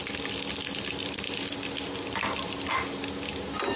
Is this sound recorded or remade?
recorded